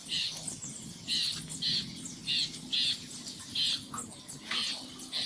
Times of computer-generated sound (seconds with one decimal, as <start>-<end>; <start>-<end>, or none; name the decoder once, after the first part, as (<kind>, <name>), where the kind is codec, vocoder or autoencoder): none